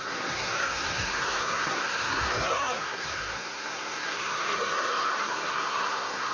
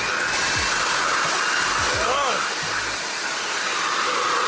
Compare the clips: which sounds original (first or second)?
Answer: second